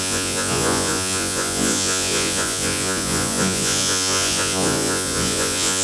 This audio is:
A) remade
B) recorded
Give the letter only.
A